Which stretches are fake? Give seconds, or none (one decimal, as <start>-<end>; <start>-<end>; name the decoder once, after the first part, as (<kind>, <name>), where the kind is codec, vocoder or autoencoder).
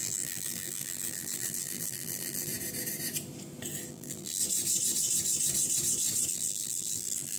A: 0.0-2.5 (vocoder, BigVGAN v2); 3.9-4.4; 6.3-7.4